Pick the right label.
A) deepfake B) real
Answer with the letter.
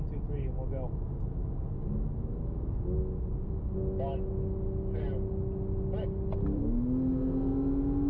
B